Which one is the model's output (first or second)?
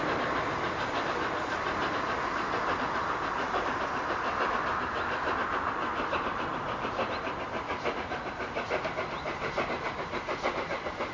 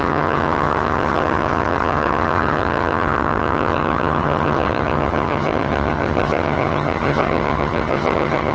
second